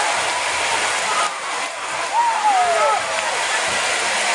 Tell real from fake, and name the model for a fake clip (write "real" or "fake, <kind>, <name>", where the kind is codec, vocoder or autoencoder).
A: real